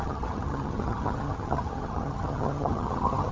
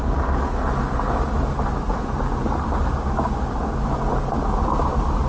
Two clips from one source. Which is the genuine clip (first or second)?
second